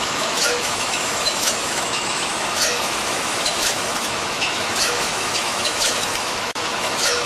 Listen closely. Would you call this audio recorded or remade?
remade